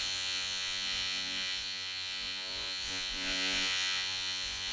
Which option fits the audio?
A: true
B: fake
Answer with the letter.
B